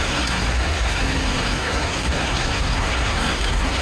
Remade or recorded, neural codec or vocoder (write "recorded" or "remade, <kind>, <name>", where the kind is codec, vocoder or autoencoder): remade, codec, SNAC